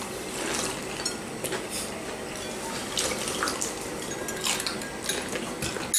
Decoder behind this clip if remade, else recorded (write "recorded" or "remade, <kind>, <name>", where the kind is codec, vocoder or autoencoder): recorded